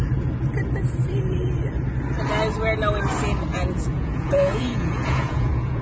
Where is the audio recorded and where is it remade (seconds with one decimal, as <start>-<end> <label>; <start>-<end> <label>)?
0.0-3.5 recorded; 3.5-5.8 remade